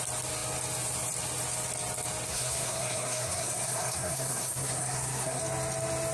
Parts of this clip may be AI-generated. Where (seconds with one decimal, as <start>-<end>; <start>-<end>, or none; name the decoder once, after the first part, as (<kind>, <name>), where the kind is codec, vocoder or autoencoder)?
2.3-5.4 (codec, SNAC)